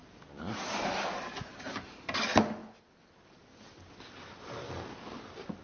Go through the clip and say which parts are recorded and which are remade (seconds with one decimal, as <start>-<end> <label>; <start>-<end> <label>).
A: 0.0-5.6 recorded